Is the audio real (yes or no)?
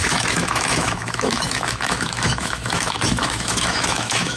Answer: no